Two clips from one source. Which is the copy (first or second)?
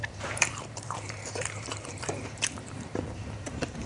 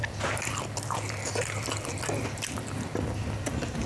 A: first